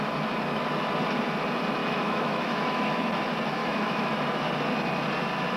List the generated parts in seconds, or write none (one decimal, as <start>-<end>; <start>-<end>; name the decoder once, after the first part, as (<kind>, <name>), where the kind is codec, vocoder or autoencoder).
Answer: 1.8-3.1 (autoencoder, DAC-VAE); 3.6-4.1